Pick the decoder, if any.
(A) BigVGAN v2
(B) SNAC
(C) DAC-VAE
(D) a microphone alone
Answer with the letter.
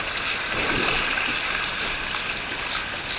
D